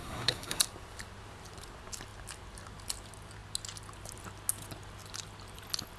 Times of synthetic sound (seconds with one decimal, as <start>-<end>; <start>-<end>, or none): 0.0-0.6